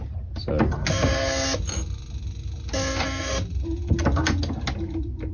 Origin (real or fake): real